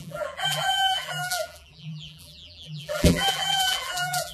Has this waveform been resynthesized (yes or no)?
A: yes